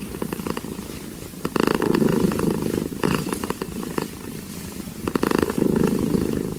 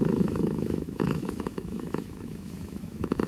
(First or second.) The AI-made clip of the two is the second